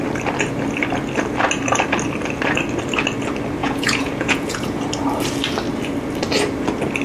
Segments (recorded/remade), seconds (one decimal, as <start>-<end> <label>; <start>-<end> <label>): 0.0-3.6 recorded; 3.6-4.8 remade; 4.8-7.0 recorded